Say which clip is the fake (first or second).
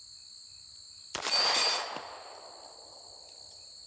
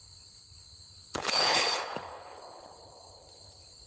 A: second